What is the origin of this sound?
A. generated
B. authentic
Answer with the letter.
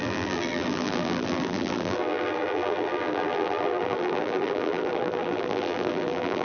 A